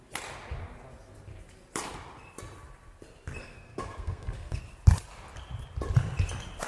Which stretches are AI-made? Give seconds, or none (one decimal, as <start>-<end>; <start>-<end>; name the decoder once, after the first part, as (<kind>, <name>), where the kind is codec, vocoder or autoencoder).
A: 3.4-4.6 (codec, SNAC)